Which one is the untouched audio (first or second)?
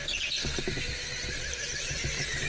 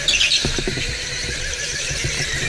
first